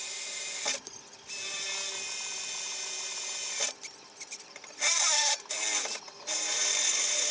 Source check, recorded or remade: recorded